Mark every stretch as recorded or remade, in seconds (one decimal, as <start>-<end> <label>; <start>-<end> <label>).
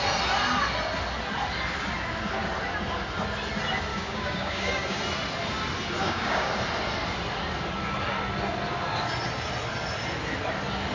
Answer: 0.0-3.9 recorded; 3.9-5.0 remade; 5.0-6.0 recorded; 6.0-6.5 remade; 6.5-10.9 recorded